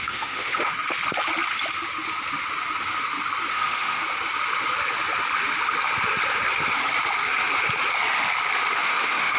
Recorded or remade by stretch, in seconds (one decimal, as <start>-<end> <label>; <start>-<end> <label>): 0.0-0.7 remade; 0.7-3.5 recorded; 3.5-4.0 remade; 4.0-8.8 recorded; 8.8-9.4 remade